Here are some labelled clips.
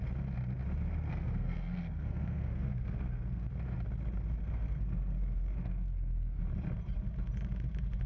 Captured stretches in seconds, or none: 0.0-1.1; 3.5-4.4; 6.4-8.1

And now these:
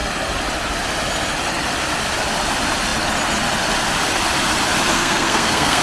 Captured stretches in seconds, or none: 0.0-4.9

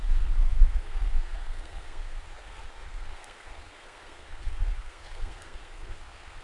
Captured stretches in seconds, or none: none

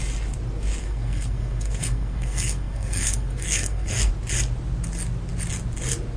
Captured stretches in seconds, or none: 0.0-0.8; 4.1-6.2

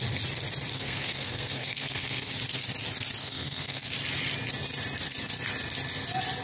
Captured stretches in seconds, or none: 0.0-0.7; 2.3-3.2; 3.9-6.4

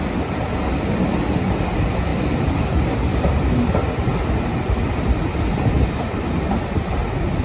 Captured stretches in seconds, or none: 0.0-7.4

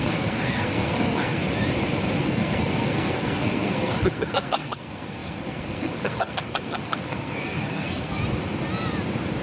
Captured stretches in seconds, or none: 1.4-2.2; 8.2-9.4